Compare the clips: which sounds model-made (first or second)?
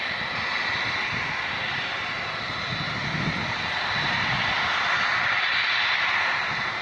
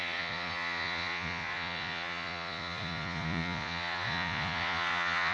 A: second